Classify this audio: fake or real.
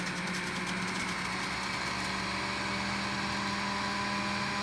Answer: real